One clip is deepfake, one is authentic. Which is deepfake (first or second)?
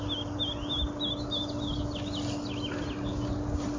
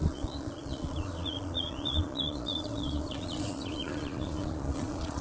second